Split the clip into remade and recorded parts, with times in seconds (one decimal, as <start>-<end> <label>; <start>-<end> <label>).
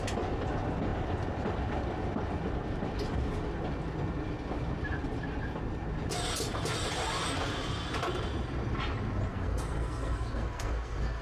0.0-9.3 recorded; 9.3-11.2 remade